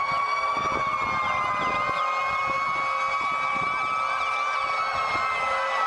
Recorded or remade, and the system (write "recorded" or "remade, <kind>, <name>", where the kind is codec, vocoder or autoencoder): recorded